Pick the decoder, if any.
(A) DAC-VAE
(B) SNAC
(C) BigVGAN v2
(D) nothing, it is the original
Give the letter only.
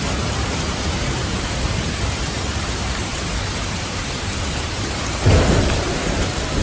C